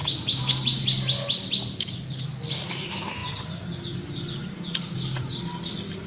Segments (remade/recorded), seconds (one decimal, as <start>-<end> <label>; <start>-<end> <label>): 0.0-0.5 remade; 0.5-6.1 recorded